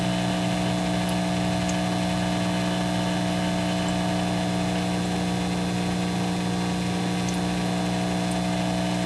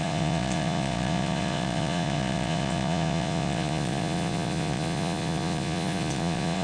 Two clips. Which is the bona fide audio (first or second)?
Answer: first